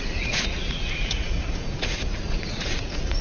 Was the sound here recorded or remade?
remade